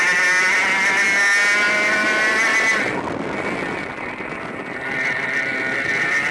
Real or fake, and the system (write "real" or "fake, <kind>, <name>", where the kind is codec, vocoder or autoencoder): real